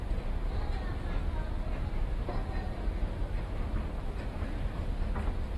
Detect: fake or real real